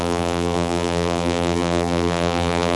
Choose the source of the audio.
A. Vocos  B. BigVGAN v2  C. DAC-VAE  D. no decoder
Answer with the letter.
B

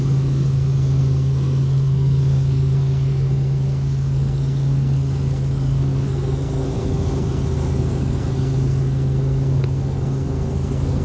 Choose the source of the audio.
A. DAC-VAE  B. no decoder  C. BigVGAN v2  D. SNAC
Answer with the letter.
D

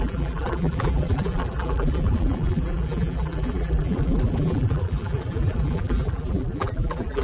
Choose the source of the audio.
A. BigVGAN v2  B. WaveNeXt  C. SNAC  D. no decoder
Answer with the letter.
A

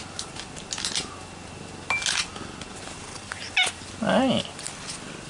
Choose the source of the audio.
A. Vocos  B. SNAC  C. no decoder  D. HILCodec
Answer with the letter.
C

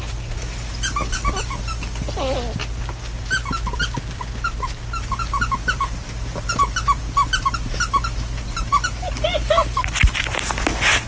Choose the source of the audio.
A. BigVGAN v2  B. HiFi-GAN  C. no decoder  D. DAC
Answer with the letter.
C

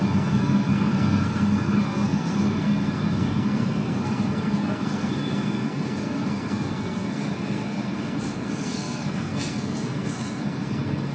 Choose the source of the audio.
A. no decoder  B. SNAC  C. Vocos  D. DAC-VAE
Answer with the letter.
B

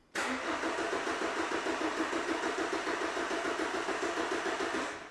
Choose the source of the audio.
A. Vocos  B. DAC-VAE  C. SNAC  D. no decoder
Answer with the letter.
D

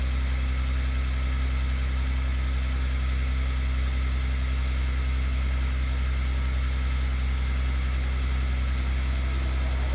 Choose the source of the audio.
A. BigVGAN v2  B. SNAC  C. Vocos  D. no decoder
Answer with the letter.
D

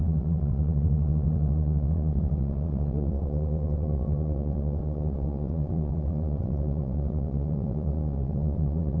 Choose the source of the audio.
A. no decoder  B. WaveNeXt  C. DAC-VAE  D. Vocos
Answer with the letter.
B